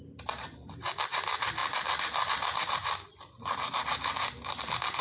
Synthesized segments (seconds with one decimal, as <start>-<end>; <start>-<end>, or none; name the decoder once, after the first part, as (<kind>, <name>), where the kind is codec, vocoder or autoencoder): none